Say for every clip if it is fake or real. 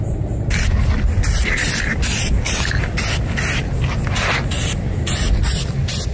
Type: real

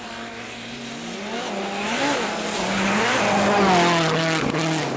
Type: real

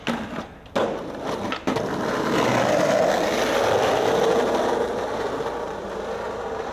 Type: real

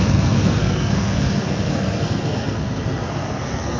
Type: fake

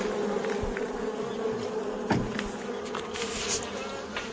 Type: real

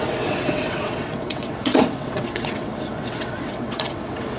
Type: fake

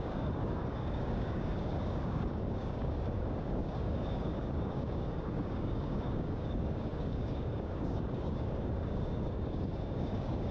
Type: fake